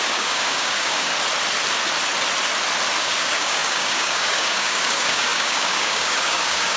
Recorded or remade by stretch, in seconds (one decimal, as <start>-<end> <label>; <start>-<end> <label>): 0.0-1.1 remade; 1.1-3.0 recorded; 3.0-6.8 remade